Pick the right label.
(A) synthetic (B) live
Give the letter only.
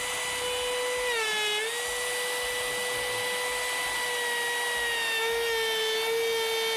B